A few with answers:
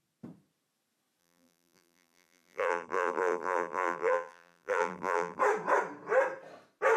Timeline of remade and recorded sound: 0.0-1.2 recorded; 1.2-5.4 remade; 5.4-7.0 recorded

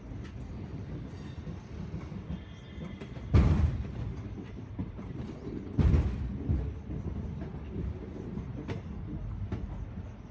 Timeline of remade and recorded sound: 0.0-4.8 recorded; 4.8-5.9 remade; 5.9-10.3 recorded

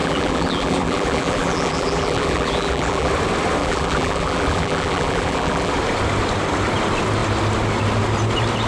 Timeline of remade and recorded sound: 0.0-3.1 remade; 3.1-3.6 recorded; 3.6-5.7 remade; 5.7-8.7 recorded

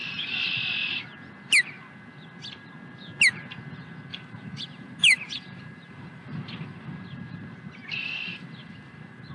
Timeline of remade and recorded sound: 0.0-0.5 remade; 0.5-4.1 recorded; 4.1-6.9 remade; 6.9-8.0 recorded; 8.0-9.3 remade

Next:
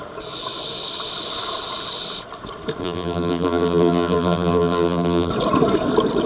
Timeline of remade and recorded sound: 0.0-2.8 recorded; 2.8-5.3 remade; 5.3-6.3 recorded

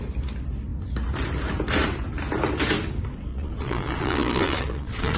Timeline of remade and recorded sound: 0.0-3.3 recorded; 3.3-5.2 remade

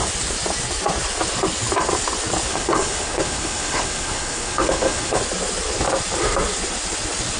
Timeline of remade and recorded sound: 0.0-2.5 recorded; 2.5-5.2 remade; 5.2-7.4 recorded

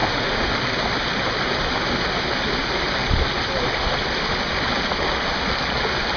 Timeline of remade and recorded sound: 0.0-6.2 recorded